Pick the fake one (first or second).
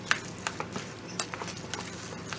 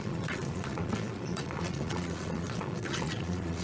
second